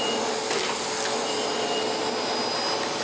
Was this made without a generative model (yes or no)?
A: yes